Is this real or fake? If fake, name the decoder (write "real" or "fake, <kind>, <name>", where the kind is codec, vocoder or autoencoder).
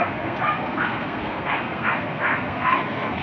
fake, codec, SNAC